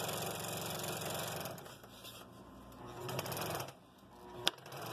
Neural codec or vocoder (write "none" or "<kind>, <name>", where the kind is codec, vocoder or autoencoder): none